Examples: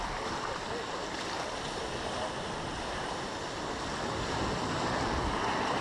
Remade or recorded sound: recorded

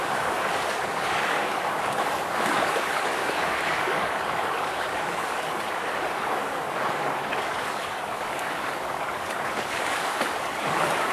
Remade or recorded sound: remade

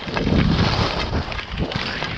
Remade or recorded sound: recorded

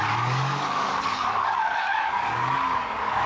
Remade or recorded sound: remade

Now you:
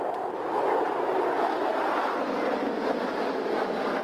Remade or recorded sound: recorded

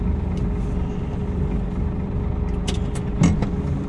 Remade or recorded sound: recorded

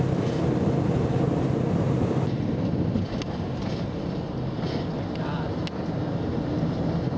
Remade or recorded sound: recorded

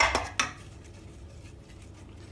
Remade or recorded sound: recorded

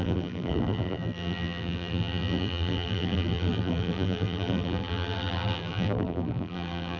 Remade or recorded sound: remade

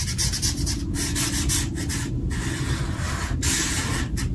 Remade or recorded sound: recorded